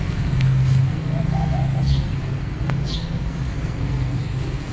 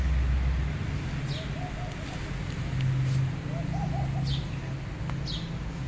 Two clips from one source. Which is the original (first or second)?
second